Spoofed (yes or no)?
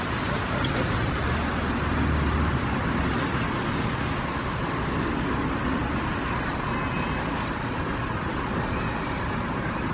no